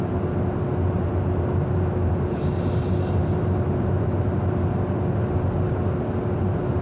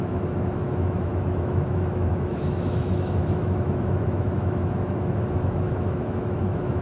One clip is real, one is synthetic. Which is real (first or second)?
first